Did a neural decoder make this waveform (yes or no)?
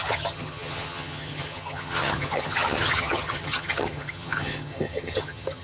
yes